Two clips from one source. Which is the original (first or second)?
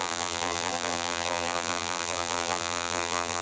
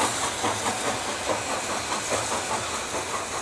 second